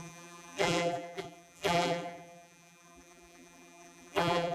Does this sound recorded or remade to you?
remade